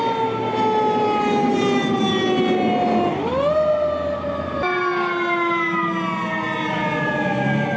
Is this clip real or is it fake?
real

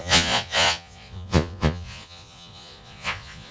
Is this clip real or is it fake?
fake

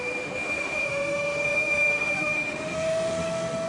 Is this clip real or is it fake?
fake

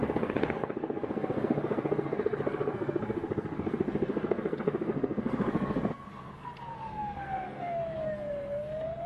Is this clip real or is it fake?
fake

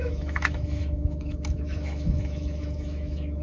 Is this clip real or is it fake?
fake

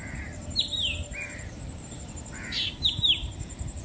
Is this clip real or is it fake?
fake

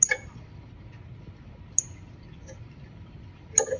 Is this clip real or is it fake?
real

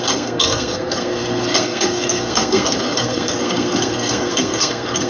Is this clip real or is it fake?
fake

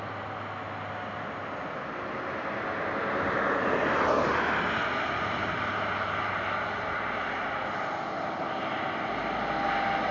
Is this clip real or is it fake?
real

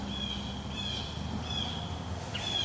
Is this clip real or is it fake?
real